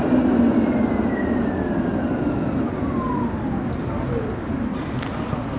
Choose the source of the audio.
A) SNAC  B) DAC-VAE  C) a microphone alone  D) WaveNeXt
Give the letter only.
C